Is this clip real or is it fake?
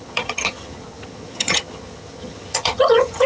fake